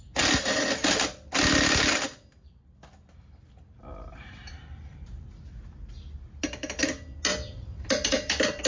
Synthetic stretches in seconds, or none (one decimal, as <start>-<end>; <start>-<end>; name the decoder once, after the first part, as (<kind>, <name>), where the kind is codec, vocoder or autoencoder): 4.1-5.5 (vocoder, BigVGAN v2); 7.3-7.9

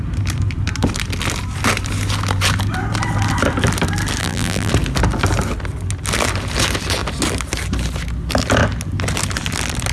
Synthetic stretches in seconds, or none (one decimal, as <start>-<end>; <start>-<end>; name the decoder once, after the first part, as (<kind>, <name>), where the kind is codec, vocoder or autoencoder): 4.2-4.7 (vocoder, BigVGAN v2)

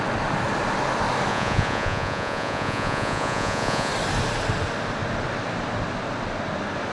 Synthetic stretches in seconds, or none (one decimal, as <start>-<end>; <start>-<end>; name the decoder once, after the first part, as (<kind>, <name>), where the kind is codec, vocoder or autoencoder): 1.3-3.9 (vocoder, Vocos)

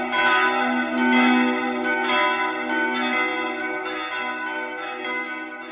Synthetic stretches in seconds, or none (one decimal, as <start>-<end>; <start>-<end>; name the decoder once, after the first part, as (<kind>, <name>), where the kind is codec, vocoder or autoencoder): none

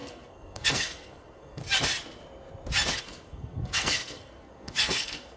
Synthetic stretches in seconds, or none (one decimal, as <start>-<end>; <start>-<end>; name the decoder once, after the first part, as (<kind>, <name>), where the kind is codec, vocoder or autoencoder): 0.0-1.6 (codec, SNAC); 3.0-5.4

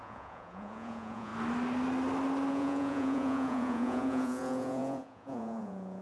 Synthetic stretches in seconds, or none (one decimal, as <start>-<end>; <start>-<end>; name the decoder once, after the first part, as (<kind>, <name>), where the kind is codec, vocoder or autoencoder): 0.0-1.3 (vocoder, Vocos); 2.5-6.0